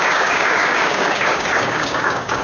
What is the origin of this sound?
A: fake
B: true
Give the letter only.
A